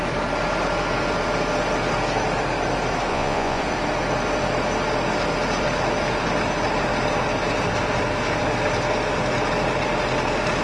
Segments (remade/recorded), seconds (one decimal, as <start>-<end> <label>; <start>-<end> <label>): 0.0-3.1 recorded; 3.1-3.6 remade; 3.6-10.6 recorded